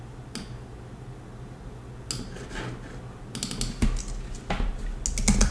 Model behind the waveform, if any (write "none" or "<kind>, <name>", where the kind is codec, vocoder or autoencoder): none